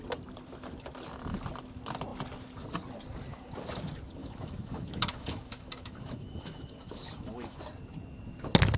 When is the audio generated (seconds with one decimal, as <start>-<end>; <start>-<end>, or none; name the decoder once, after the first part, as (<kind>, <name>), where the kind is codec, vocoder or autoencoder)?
4.2-7.6 (autoencoder, DAC-VAE)